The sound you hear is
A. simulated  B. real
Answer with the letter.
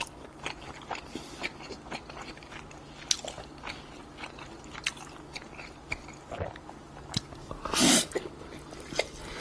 B